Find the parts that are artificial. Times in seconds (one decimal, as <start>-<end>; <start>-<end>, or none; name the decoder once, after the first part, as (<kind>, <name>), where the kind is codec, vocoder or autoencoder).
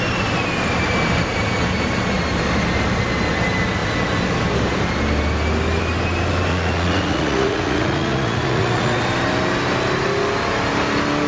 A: 6.5-9.0 (vocoder, Vocos)